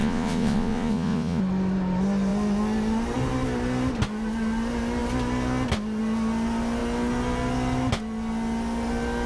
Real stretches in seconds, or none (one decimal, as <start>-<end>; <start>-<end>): 1.4-9.3